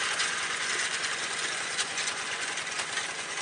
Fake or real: fake